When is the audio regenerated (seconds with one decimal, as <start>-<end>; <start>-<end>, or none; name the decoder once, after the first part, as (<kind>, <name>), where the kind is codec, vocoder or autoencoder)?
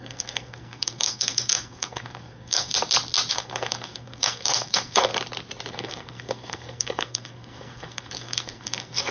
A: 0.0-2.7 (codec, SNAC); 3.3-5.1; 5.7-9.1